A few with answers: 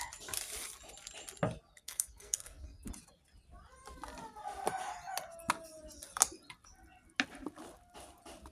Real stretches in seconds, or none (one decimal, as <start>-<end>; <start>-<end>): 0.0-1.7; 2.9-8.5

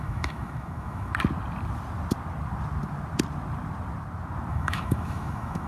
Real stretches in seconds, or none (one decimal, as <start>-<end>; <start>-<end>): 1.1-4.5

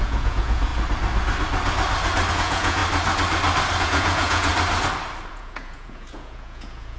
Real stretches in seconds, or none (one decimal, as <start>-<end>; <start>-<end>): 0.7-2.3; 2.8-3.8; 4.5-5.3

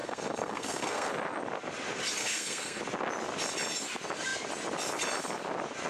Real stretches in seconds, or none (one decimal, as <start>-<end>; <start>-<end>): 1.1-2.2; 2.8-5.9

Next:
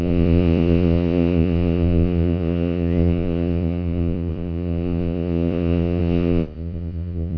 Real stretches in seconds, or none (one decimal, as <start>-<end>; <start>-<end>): none

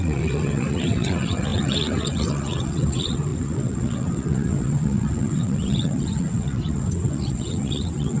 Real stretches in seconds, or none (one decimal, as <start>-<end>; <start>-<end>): none

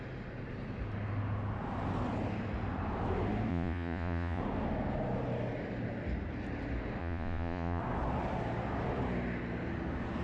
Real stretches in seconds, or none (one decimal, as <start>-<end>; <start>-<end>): 0.0-3.5; 4.4-7.0; 7.8-10.2

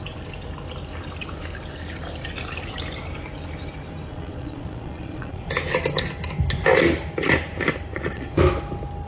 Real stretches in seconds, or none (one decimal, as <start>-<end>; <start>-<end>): 0.0-4.1; 5.5-7.9; 8.4-9.1